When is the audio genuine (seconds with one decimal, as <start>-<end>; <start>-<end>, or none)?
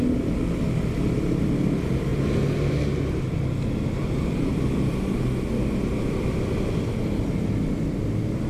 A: 0.0-8.5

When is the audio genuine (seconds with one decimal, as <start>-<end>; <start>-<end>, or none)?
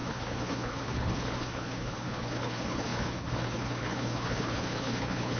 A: none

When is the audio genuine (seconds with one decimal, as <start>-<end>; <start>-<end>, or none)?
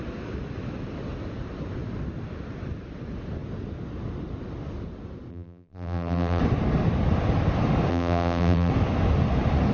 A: 0.0-5.3; 6.4-7.9; 8.7-9.7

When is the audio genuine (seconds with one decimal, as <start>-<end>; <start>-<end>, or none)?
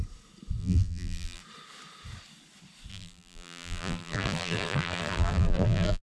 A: 0.0-0.6; 1.4-2.9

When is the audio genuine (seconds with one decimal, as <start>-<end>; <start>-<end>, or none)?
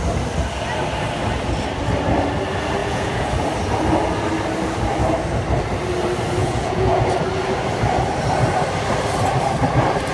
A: 0.0-2.8; 3.3-6.4; 7.0-10.1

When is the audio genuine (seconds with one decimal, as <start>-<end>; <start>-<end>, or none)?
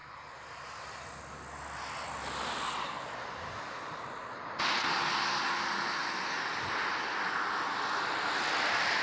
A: 0.0-9.0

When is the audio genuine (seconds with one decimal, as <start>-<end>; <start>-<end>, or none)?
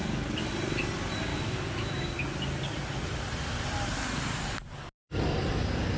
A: 0.0-1.3; 2.1-6.0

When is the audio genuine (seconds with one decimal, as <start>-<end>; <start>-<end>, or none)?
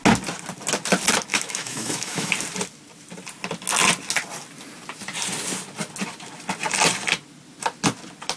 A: 0.0-1.3; 2.3-8.4